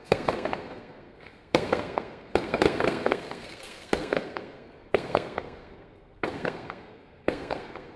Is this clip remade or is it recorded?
remade